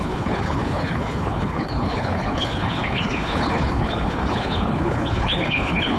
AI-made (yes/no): yes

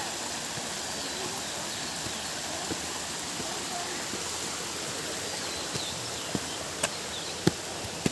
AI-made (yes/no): no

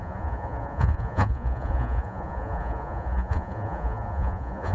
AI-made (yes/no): yes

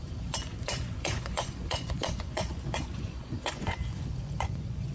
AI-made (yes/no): yes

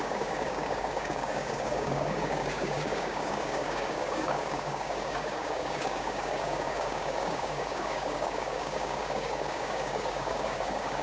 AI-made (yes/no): yes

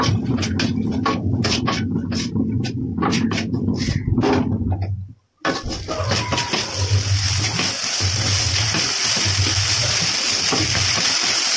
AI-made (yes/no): no